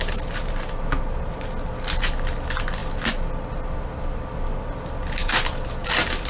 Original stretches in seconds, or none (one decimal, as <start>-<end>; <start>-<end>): 0.0-6.3